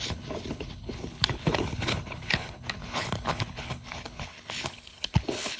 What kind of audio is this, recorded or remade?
remade